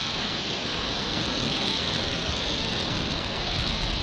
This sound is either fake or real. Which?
fake